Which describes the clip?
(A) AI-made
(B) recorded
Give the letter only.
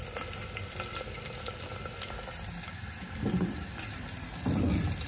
B